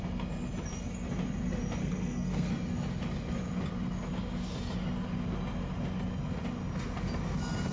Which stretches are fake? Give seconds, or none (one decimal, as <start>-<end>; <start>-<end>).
1.8-2.5